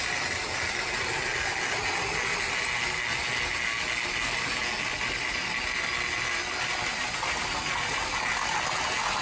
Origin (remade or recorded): recorded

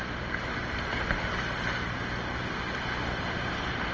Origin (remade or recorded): recorded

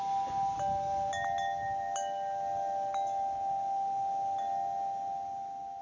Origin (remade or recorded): recorded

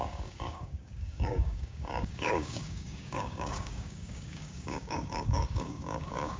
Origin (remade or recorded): remade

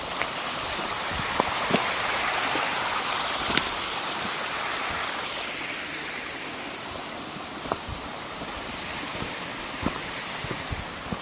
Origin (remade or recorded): recorded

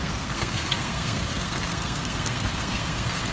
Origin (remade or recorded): remade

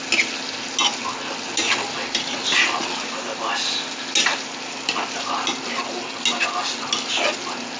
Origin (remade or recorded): recorded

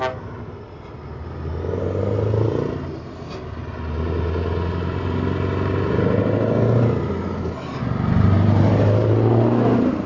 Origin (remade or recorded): recorded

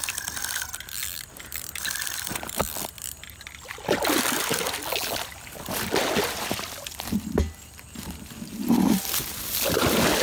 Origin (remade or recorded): recorded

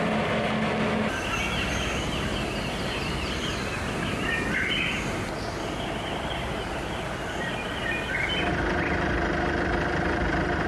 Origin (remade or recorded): recorded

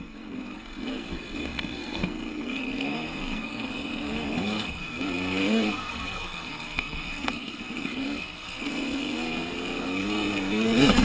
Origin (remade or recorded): remade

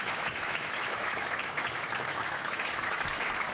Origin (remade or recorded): remade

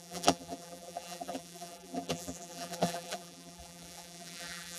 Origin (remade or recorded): remade